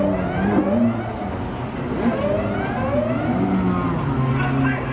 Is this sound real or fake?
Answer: real